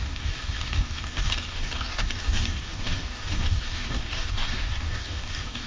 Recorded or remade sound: remade